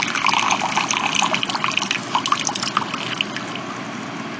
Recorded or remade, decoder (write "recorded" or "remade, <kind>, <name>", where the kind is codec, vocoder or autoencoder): recorded